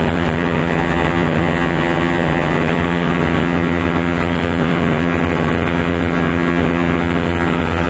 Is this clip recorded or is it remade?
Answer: remade